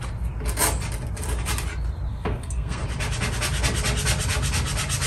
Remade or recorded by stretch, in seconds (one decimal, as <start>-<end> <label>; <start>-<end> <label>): 0.0-2.1 recorded; 2.1-2.8 remade; 2.8-5.1 recorded